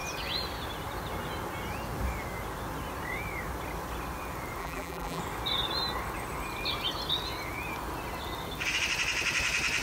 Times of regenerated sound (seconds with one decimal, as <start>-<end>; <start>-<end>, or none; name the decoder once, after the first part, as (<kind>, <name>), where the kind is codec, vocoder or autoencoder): 4.6-5.2 (vocoder, BigVGAN v2)